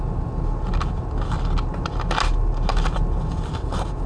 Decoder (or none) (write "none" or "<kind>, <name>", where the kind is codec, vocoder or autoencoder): none